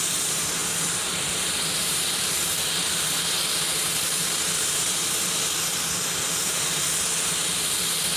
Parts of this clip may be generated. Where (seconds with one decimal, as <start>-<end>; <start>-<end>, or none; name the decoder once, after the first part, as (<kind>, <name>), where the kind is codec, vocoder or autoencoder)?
none